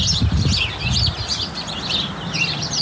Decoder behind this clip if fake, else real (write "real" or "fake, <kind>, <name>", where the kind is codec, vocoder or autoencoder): real